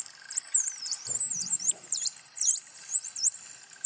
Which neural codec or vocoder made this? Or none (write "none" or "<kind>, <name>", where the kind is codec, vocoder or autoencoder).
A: vocoder, BigVGAN v2